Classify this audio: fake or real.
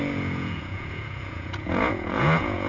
fake